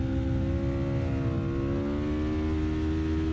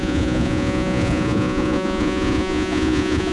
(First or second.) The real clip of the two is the first